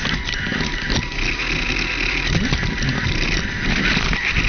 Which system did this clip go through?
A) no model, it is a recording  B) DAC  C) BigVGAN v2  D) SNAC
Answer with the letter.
A